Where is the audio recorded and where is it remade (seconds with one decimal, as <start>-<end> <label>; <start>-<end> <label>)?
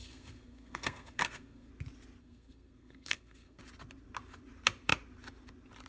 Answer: 0.0-1.7 remade; 1.7-2.2 recorded; 2.2-3.6 remade; 3.6-5.9 recorded